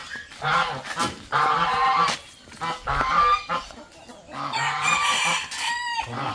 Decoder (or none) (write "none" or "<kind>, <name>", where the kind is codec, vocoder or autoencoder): none